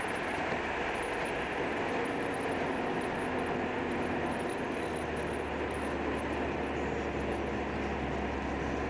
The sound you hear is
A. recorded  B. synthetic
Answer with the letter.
A